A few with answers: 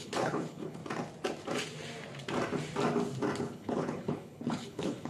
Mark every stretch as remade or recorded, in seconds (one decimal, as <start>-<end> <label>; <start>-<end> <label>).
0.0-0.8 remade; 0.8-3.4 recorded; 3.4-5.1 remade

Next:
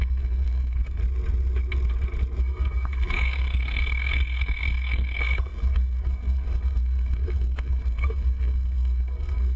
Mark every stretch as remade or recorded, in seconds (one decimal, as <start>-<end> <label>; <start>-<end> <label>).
0.0-1.0 remade; 1.0-2.4 recorded; 2.4-9.6 remade

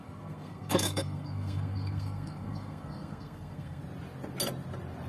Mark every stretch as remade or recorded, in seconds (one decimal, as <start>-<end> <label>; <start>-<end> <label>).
0.0-3.8 remade; 3.8-5.1 recorded

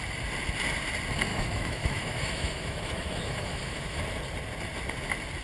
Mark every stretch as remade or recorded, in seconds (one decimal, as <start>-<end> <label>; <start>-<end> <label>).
0.0-1.3 recorded; 1.3-4.0 remade; 4.0-5.4 recorded